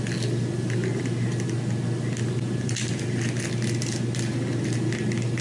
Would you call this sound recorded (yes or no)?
yes